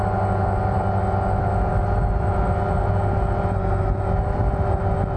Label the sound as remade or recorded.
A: recorded